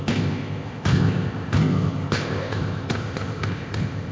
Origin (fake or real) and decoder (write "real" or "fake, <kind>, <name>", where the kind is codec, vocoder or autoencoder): fake, codec, ZipCodec